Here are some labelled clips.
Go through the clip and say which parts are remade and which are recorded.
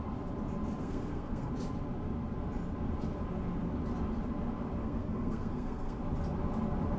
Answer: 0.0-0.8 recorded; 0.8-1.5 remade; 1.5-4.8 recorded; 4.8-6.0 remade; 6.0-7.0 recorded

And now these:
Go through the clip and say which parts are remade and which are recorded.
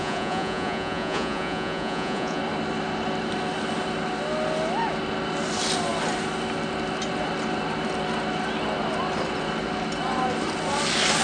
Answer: 0.0-2.4 remade; 2.4-11.2 recorded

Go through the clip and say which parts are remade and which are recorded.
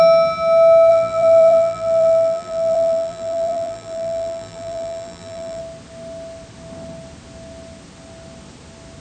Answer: 0.0-0.9 recorded; 0.9-5.6 remade; 5.6-9.0 recorded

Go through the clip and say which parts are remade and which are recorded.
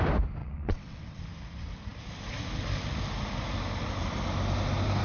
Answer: 0.0-0.4 recorded; 0.4-1.2 remade; 1.2-5.0 recorded